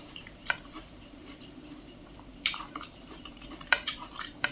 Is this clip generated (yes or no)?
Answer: yes